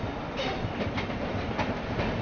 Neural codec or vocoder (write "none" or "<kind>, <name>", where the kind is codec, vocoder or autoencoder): none